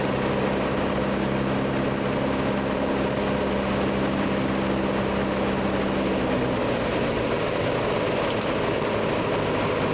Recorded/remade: recorded